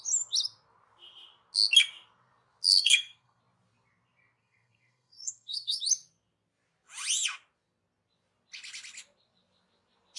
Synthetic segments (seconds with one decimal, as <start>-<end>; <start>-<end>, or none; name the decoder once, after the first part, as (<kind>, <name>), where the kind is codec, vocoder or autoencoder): 2.7-3.4 (codec, SNAC); 4.4-5.8